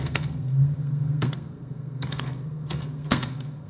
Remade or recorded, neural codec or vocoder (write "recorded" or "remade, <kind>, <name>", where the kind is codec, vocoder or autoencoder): remade, codec, SNAC